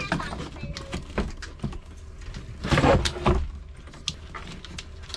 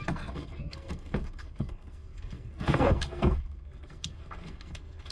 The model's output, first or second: second